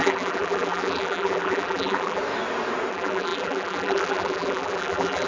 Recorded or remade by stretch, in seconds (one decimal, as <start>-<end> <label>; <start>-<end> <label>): 0.0-2.2 remade; 2.2-2.9 recorded; 2.9-5.3 remade